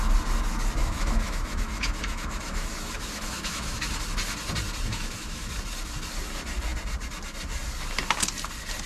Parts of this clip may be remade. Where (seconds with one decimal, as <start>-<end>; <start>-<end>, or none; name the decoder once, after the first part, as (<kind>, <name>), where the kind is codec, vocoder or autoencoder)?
0.8-4.0 (autoencoder, DAC-VAE); 4.9-5.5